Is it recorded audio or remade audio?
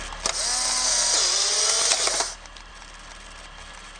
recorded